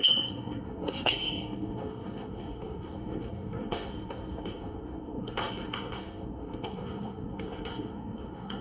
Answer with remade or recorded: remade